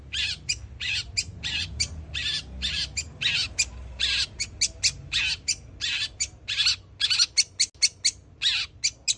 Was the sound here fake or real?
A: real